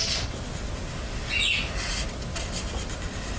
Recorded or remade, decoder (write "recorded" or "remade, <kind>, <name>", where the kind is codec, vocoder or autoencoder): recorded